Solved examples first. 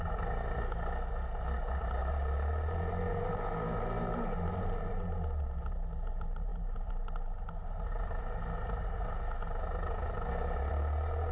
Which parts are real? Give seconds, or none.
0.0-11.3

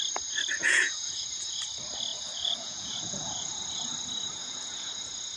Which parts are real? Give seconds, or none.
0.0-0.6; 1.6-2.1; 3.6-4.4; 4.9-5.4